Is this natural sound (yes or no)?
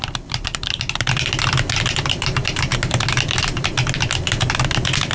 yes